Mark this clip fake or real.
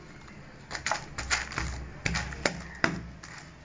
real